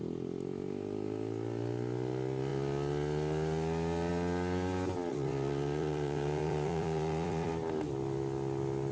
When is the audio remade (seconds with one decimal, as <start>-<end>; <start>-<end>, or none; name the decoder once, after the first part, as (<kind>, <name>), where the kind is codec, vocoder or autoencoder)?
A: 5.1-7.5 (vocoder, Vocos)